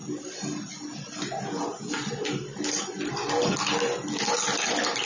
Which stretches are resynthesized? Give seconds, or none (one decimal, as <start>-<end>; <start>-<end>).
none